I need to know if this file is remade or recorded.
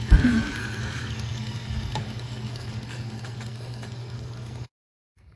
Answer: remade